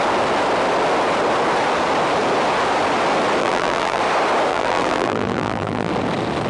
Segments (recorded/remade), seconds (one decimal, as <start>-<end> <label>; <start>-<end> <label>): 0.0-3.4 recorded; 3.4-4.0 remade; 4.0-4.5 recorded; 4.5-5.9 remade; 5.9-6.5 recorded